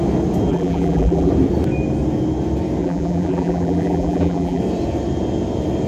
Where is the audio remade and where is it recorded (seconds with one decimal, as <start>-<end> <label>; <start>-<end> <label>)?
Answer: 0.0-0.5 recorded; 0.5-1.3 remade; 1.3-2.8 recorded; 2.8-4.6 remade; 4.6-5.9 recorded

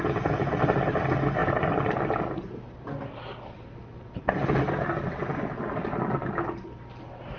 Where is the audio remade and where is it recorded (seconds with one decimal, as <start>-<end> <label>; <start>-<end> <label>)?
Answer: 0.0-7.4 recorded